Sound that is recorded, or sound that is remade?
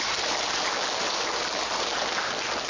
recorded